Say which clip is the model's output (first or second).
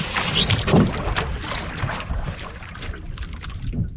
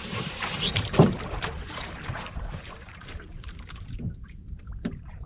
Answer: second